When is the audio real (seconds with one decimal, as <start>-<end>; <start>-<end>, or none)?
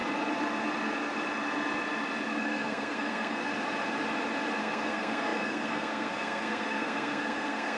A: 0.0-2.4; 3.5-4.6